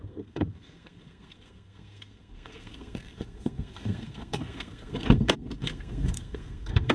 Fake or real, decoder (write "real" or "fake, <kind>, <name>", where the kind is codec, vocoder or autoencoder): fake, codec, SNAC